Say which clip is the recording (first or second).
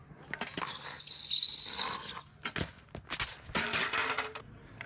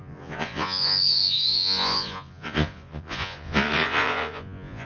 first